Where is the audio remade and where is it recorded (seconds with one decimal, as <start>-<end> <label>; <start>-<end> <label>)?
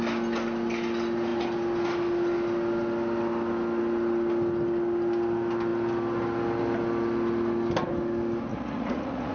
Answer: 0.0-8.5 recorded; 8.5-9.3 remade